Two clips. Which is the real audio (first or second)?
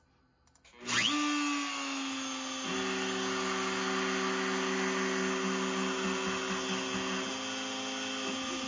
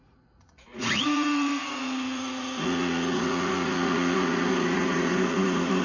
first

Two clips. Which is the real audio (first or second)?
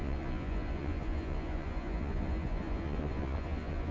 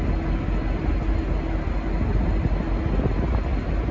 second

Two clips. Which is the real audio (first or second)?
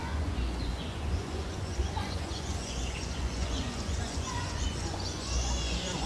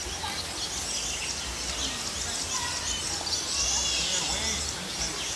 second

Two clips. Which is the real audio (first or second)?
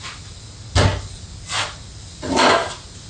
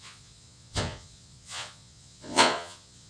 first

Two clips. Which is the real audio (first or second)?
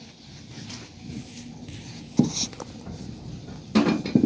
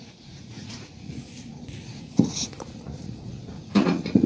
first